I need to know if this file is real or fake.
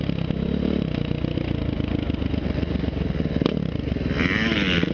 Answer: real